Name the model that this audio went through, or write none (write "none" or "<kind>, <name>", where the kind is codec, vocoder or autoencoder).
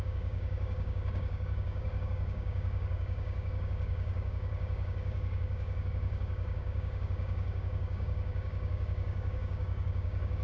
codec, DAC